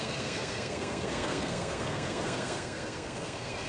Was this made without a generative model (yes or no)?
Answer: no